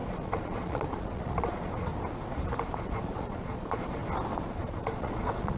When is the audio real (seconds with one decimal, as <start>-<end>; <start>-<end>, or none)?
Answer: 1.9-2.8; 4.0-4.5